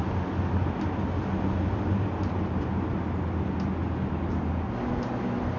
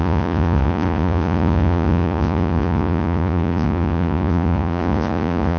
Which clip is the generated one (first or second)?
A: second